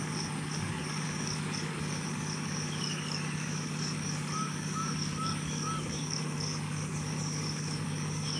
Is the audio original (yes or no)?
no